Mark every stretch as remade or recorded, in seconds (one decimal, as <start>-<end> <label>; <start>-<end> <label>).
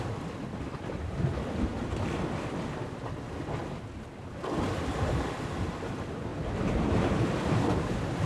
0.0-6.3 recorded; 6.3-8.3 remade